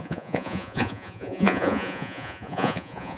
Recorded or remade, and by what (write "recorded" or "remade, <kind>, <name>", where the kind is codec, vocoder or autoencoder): remade, vocoder, Vocos